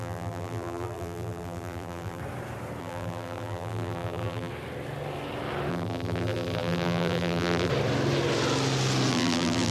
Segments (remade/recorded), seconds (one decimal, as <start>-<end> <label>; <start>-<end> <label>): 0.0-2.2 remade; 2.2-2.8 recorded; 2.8-4.5 remade; 4.5-5.7 recorded; 5.7-7.7 remade; 7.7-9.1 recorded; 9.1-9.7 remade